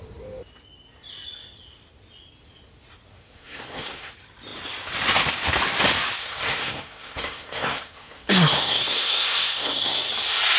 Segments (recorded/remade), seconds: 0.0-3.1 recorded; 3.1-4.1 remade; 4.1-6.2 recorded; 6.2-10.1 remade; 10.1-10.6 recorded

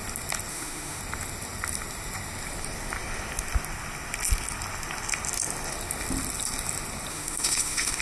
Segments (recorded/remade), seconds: 0.0-0.5 recorded; 0.5-1.0 remade; 1.0-7.1 recorded; 7.1-8.0 remade